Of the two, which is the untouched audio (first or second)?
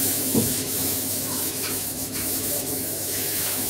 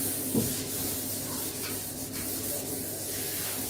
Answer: second